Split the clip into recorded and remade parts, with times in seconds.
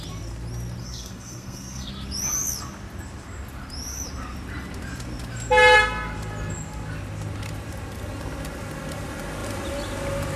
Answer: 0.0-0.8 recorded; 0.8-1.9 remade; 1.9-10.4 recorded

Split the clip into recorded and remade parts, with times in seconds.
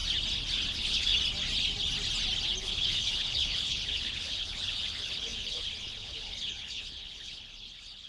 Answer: 0.0-0.7 recorded; 0.7-1.1 remade; 1.1-2.6 recorded; 2.6-8.1 remade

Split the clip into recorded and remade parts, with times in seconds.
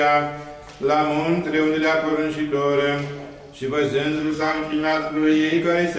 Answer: 0.0-4.2 recorded; 4.2-5.6 remade; 5.6-6.0 recorded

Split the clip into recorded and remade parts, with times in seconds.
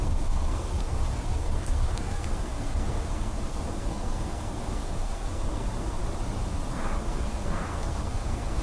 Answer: 0.0-6.0 remade; 6.0-6.7 recorded; 6.7-8.6 remade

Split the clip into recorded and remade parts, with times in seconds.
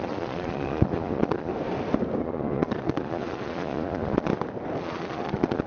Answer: 0.0-1.5 remade; 1.5-2.2 recorded; 2.2-4.3 remade; 4.3-4.8 recorded; 4.8-5.7 remade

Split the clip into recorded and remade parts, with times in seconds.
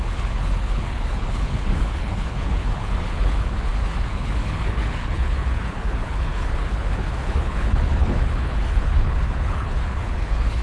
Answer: 0.0-10.6 remade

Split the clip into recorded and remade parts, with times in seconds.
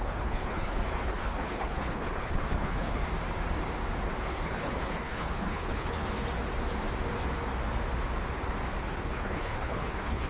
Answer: 0.0-3.0 remade; 3.0-4.2 recorded; 4.2-6.0 remade; 6.0-8.8 recorded; 8.8-10.3 remade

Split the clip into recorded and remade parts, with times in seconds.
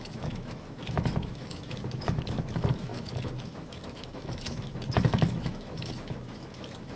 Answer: 0.0-7.0 remade